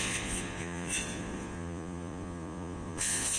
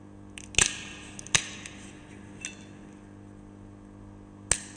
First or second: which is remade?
first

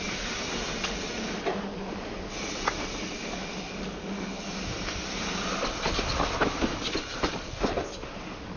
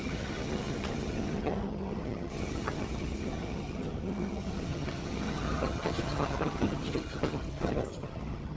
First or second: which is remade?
second